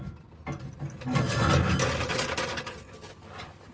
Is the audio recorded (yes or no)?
yes